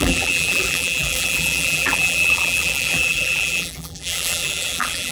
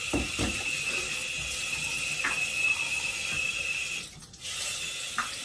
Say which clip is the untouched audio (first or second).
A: second